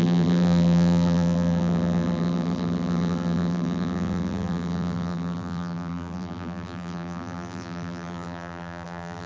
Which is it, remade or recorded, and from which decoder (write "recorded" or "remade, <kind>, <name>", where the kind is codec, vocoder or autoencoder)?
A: remade, vocoder, BigVGAN v2